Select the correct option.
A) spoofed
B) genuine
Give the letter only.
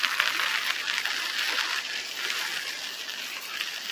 B